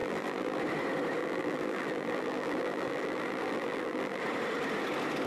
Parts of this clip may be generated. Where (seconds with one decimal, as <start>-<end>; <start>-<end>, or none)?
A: 0.0-0.6; 1.2-4.2